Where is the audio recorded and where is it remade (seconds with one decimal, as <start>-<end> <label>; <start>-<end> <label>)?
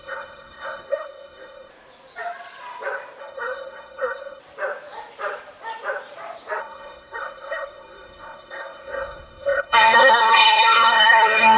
0.0-1.7 remade; 1.7-3.2 recorded; 3.2-4.4 remade; 4.4-6.6 recorded; 6.6-11.6 remade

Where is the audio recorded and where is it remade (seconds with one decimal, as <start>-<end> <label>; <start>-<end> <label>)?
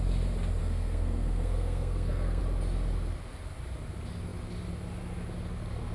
0.0-0.6 recorded; 0.6-2.4 remade; 2.4-5.9 recorded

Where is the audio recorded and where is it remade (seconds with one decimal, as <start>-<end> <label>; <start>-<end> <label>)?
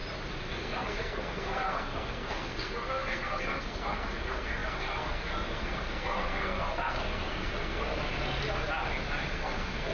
0.0-0.5 recorded; 0.5-8.0 remade; 8.0-9.3 recorded; 9.3-9.9 remade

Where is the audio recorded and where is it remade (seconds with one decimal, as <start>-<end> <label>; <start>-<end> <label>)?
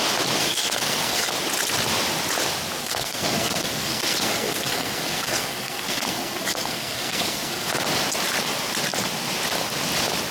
0.0-0.4 recorded; 0.4-1.3 remade; 1.3-2.8 recorded; 2.8-7.7 remade; 7.7-10.3 recorded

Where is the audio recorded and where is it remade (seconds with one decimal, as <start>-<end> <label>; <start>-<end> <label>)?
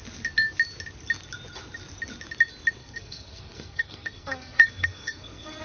0.0-2.8 recorded; 2.8-5.6 remade